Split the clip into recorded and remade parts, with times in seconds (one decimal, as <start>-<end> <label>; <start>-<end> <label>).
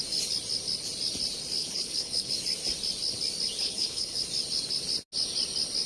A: 0.0-1.6 recorded; 1.6-2.3 remade; 2.3-3.6 recorded; 3.6-4.2 remade; 4.2-5.9 recorded